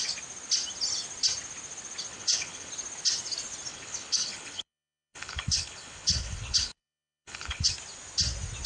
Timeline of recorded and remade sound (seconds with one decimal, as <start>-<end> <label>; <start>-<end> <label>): 0.0-2.1 recorded; 2.1-2.7 remade; 2.7-3.7 recorded; 3.7-7.7 remade; 7.7-8.7 recorded